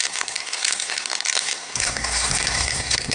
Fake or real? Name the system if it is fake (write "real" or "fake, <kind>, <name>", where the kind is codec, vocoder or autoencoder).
fake, codec, SNAC